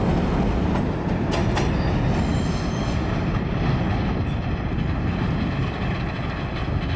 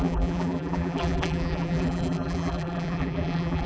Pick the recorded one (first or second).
first